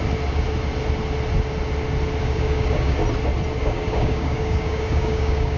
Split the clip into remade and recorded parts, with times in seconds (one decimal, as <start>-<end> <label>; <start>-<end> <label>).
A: 0.0-2.2 recorded; 2.2-3.0 remade; 3.0-3.6 recorded; 3.6-5.6 remade